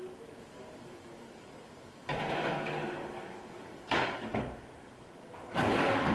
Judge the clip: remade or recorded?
remade